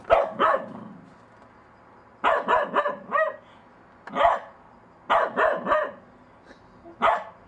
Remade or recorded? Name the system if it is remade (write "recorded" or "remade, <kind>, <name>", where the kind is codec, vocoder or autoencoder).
recorded